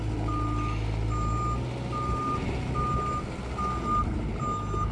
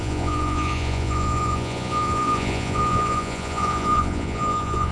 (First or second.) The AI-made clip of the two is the second